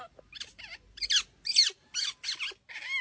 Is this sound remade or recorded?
recorded